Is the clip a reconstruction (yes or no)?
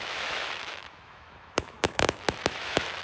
yes